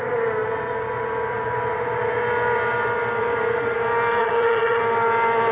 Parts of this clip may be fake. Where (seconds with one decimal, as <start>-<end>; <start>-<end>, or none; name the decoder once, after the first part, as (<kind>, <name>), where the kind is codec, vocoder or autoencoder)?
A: 4.2-4.8 (vocoder, HiFi-GAN)